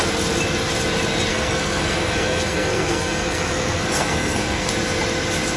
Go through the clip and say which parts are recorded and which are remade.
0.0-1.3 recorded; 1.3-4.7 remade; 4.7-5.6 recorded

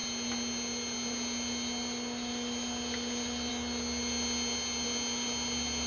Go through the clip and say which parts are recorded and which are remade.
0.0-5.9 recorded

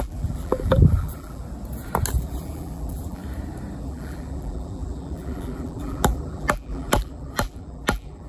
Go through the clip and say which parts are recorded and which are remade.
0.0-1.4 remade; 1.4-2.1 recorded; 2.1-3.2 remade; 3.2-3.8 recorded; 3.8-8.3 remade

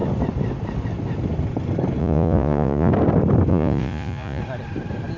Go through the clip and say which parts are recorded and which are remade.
0.0-2.0 recorded; 2.0-2.9 remade; 2.9-3.5 recorded; 3.5-4.4 remade; 4.4-5.2 recorded

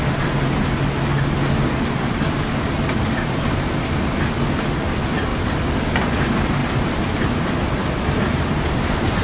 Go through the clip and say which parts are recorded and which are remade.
0.0-6.6 recorded; 6.6-7.8 remade; 7.8-9.2 recorded

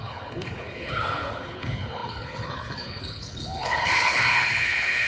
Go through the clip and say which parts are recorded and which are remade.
0.0-5.1 remade

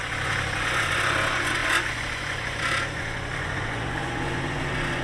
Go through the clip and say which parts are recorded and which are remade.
0.0-5.0 remade

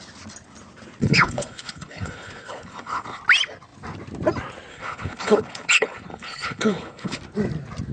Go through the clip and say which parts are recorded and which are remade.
0.0-1.0 recorded; 1.0-3.2 remade; 3.2-4.7 recorded; 4.7-7.2 remade; 7.2-7.9 recorded